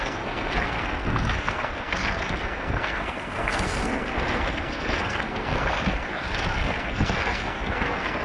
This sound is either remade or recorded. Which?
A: remade